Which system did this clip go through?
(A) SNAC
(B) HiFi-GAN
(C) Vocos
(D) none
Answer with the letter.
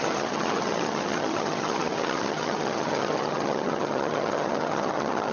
B